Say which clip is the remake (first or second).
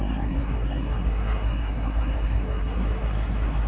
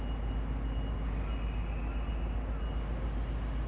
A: first